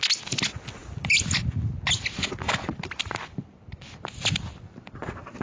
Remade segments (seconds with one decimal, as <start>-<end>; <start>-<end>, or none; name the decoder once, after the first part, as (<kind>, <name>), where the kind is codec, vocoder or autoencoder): none